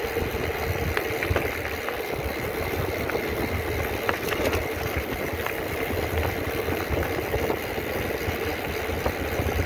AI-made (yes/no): no